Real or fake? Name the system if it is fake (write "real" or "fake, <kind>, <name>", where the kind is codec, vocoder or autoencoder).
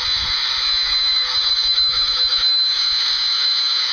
fake, autoencoder, DAC-VAE